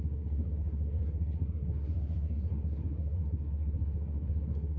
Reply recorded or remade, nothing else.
remade